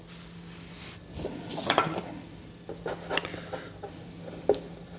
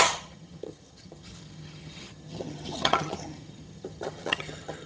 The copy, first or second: second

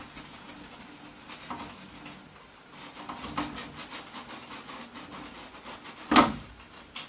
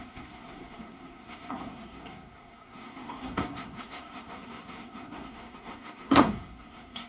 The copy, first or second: second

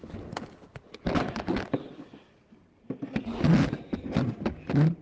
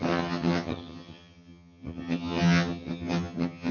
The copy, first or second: second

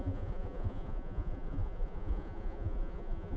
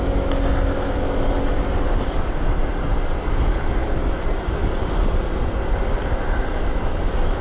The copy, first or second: first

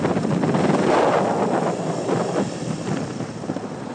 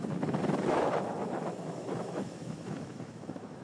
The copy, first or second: second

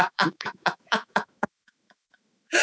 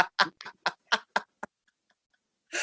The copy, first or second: first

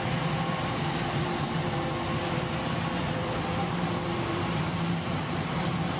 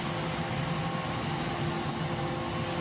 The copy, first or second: first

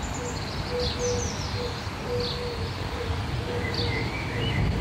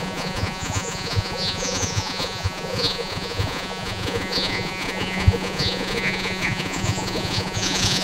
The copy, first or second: second